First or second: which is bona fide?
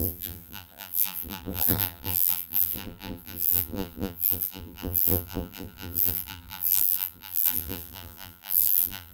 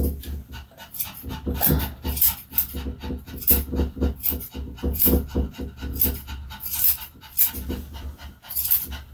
second